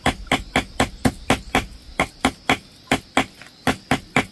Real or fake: real